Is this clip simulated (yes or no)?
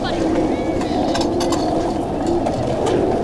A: no